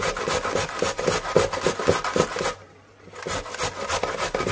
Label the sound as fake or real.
real